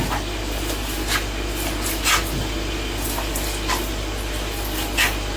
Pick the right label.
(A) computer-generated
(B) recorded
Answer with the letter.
B